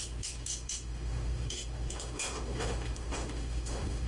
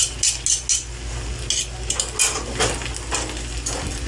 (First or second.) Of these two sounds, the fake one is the first